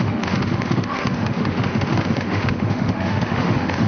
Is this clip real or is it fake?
fake